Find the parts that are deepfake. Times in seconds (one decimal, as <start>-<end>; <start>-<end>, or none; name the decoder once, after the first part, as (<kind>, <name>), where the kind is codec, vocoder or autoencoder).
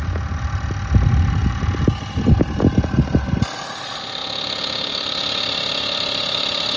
none